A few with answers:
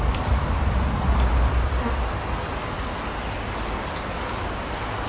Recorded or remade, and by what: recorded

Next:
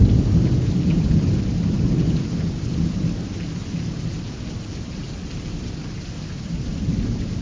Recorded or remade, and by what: recorded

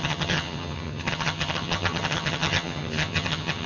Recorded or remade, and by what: remade, vocoder, HiFi-GAN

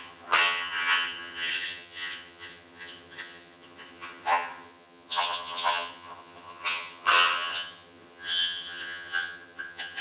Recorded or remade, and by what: remade, vocoder, HiFi-GAN